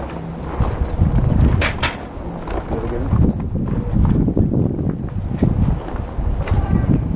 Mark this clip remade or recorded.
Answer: recorded